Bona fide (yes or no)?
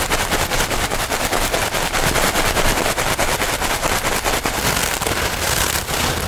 yes